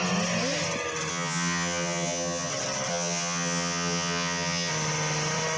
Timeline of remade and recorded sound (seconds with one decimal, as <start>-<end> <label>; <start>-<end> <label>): 0.0-1.1 recorded; 1.1-2.5 remade; 2.5-2.9 recorded; 2.9-4.7 remade; 4.7-5.6 recorded